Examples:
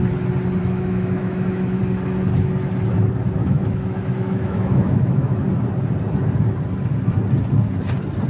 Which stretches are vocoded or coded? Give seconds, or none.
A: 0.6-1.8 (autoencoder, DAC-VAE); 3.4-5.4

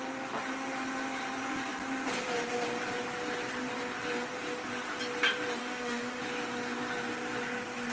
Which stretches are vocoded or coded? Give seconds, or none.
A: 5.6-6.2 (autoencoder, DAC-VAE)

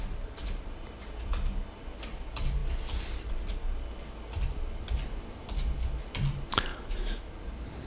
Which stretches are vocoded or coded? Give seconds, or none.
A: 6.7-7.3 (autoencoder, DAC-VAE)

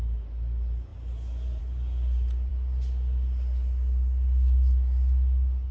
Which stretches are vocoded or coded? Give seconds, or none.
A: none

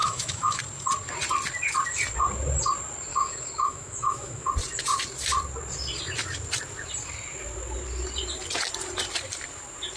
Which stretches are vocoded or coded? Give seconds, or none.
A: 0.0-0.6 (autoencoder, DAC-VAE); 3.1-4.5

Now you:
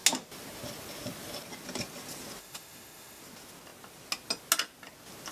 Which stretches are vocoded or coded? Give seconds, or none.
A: 2.4-3.2 (autoencoder, DAC-VAE)